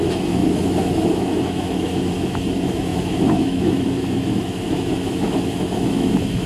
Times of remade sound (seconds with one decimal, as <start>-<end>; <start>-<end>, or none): 0.0-6.5